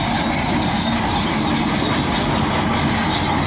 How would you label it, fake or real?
real